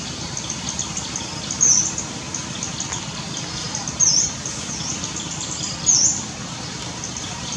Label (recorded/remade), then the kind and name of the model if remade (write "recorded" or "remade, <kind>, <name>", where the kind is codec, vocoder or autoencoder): recorded